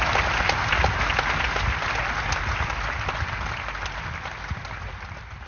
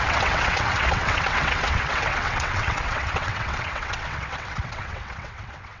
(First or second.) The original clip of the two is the first